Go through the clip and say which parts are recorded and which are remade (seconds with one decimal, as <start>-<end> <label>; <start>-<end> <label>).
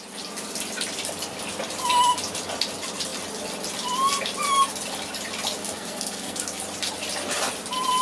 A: 0.0-5.6 recorded; 5.6-6.6 remade; 6.6-8.0 recorded